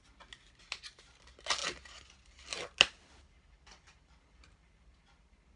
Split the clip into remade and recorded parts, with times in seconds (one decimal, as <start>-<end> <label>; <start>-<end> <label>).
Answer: 0.0-5.6 recorded

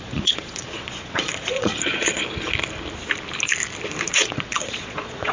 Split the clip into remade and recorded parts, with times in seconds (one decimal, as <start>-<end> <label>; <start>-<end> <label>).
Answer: 0.0-2.2 remade; 2.2-4.1 recorded; 4.1-5.3 remade